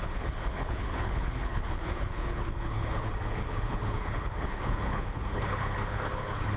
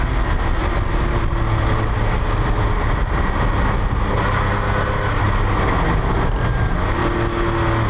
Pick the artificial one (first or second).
first